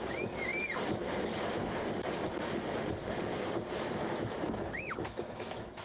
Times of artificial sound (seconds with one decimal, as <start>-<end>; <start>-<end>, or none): 0.0-0.5; 3.9-5.8